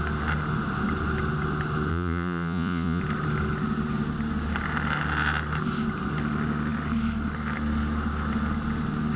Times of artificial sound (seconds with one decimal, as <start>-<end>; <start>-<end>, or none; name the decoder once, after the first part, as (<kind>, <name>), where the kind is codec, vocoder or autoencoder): 1.9-3.0 (vocoder, Vocos)